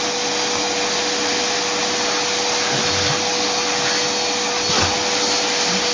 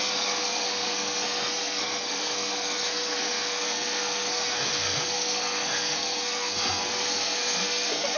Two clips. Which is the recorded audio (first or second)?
first